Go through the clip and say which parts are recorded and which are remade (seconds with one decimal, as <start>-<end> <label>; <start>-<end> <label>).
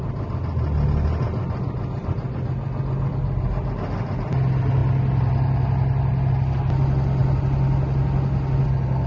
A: 0.0-9.1 recorded